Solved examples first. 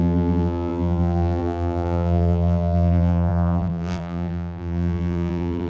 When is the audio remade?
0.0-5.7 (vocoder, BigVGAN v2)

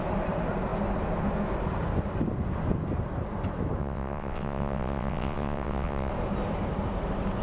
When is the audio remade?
3.8-6.1 (vocoder, WaveNeXt)

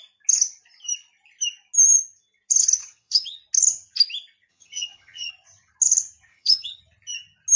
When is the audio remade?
2.8-3.4 (vocoder, HiFi-GAN); 4.5-5.3; 6.3-6.8

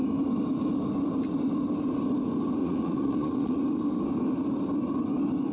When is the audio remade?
2.6-3.6 (vocoder, Vocos)

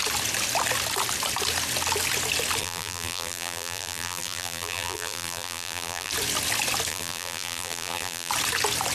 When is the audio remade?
2.6-6.1 (vocoder, BigVGAN v2); 6.9-8.3

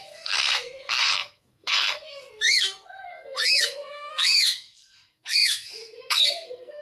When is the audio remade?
0.0-6.8 (codec, SNAC)

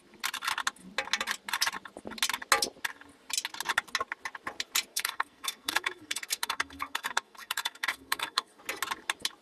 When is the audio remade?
4.9-8.6 (codec, SNAC)